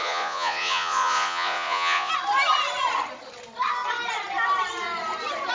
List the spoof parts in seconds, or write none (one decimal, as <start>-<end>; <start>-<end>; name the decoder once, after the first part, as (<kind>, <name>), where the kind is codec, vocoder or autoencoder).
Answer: 0.0-2.1 (vocoder, Vocos)

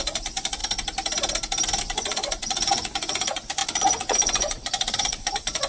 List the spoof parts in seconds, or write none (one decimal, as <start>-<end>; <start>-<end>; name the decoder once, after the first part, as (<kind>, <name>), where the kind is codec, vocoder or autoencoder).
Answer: 0.0-0.6 (vocoder, Vocos); 1.8-5.7

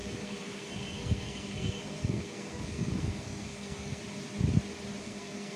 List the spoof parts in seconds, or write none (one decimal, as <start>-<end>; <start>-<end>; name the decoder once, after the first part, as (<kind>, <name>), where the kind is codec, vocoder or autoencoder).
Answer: 0.0-4.0 (codec, SNAC); 5.0-5.6

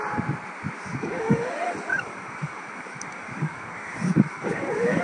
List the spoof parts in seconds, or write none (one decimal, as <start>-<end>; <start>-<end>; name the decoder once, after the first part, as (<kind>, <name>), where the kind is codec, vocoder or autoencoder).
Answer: 0.9-1.5 (codec, DAC); 1.9-5.0

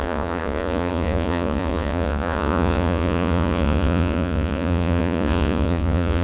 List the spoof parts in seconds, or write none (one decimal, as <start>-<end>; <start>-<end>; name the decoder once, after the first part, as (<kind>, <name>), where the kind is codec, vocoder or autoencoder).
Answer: 0.0-6.2 (vocoder, Vocos)

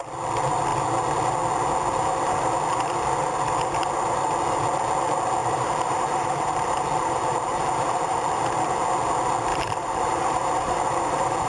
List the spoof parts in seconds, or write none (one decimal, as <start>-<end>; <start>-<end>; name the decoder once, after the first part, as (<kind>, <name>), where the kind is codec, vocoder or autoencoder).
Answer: 5.4-8.4 (vocoder, BigVGAN v2); 9.5-11.5